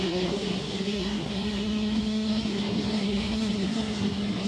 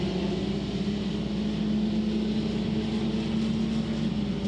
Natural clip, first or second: second